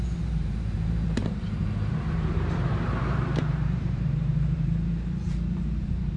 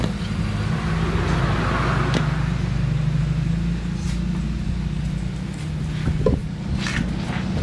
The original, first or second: second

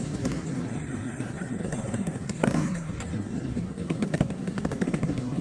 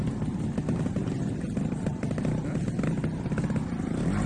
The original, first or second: second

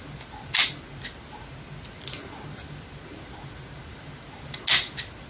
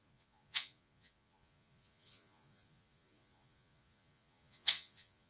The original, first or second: first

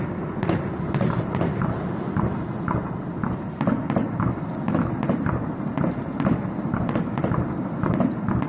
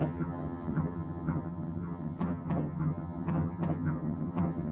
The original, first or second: first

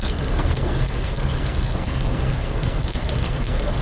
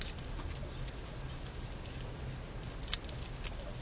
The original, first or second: second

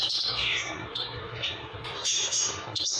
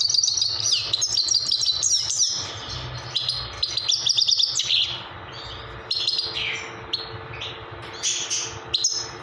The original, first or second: second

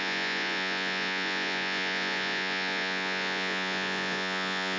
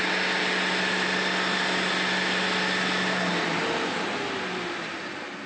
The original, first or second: second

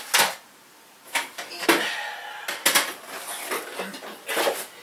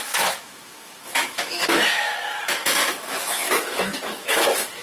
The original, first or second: first